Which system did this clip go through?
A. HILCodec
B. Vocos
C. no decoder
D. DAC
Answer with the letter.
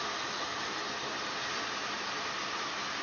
C